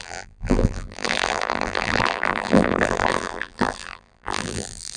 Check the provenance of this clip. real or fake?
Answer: fake